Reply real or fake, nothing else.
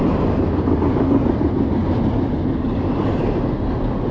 real